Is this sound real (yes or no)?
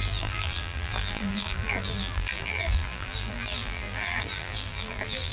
no